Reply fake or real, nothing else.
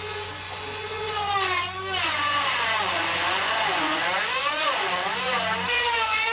fake